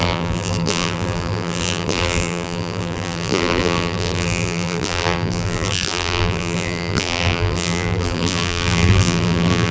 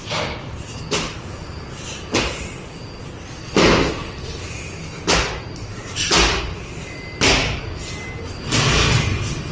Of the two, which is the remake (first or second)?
first